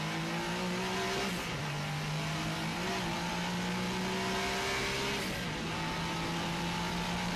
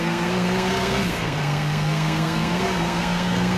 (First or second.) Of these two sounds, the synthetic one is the second